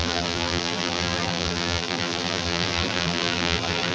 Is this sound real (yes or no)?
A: no